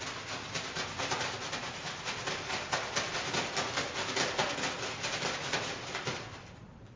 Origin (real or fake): real